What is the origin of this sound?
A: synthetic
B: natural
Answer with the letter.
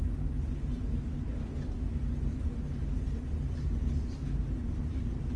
B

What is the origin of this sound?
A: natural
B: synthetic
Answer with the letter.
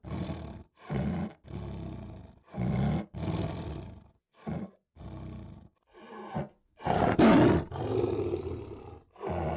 A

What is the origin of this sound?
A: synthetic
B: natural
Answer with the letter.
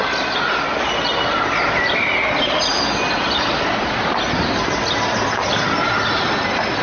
B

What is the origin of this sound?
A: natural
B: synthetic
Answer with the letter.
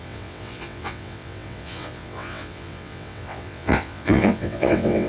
B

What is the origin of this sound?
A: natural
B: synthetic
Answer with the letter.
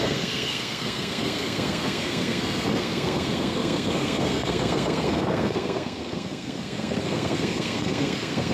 B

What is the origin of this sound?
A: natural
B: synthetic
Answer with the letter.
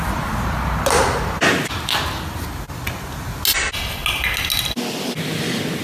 A